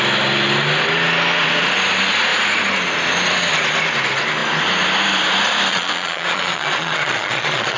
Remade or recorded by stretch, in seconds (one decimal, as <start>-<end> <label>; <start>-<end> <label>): 0.0-5.7 recorded; 5.7-7.8 remade